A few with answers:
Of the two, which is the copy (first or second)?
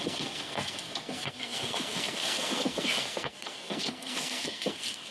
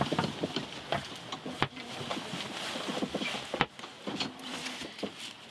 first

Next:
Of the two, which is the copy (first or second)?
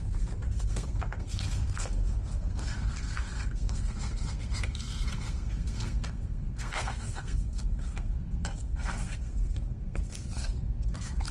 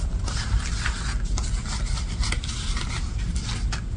first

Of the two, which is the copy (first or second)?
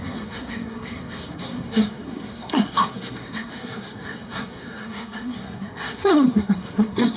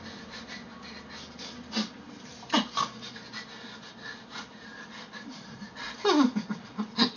first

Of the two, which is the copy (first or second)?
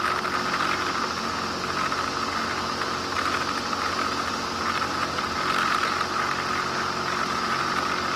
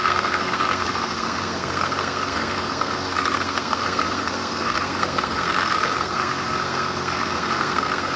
second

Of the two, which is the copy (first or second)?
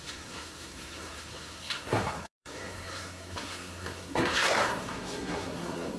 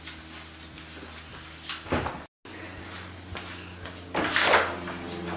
first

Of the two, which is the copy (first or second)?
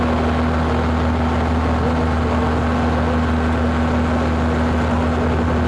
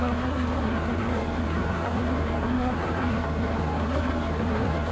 second